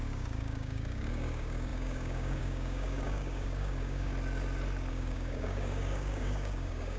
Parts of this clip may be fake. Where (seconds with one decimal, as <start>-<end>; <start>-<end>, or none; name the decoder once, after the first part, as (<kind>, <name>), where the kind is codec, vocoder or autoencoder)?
0.0-4.1 (codec, DAC); 4.9-7.0